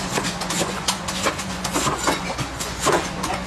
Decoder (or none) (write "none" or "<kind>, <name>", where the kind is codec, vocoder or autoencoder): vocoder, Vocos